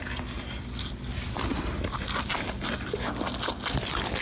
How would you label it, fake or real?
real